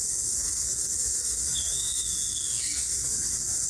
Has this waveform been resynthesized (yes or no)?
yes